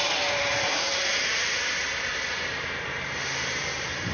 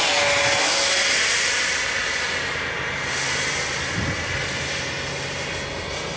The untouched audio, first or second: second